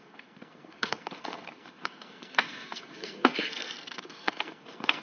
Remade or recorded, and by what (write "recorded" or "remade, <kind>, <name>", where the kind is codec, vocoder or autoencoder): remade, codec, SNAC